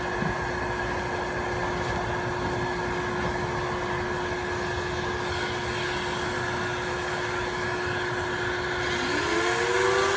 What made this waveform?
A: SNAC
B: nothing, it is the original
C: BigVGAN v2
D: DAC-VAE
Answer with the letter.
B